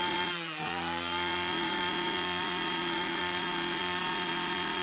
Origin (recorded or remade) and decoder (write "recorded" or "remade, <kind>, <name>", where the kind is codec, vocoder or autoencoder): remade, vocoder, Vocos